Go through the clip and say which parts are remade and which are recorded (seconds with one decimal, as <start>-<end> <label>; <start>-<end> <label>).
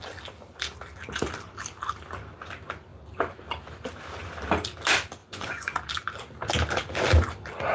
0.0-5.2 recorded; 5.2-5.8 remade; 5.8-7.7 recorded